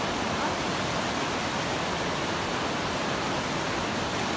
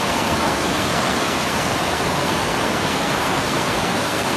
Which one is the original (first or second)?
first